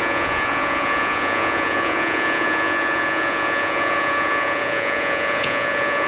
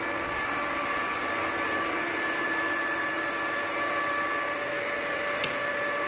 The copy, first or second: first